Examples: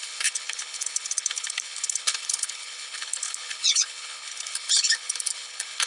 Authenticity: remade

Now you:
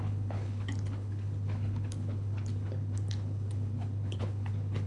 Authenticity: remade